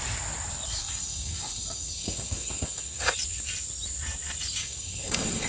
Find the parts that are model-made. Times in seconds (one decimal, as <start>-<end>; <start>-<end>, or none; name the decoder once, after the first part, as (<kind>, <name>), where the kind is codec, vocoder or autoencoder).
0.8-3.1 (codec, DAC); 4.6-5.5